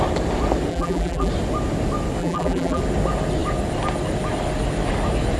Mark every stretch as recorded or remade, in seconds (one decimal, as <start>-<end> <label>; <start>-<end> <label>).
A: 0.0-0.7 recorded; 0.7-1.3 remade; 1.3-2.2 recorded; 2.2-2.8 remade; 2.8-5.4 recorded